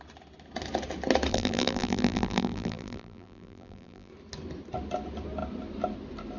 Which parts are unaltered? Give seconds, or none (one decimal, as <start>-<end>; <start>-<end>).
0.0-1.3; 4.1-6.4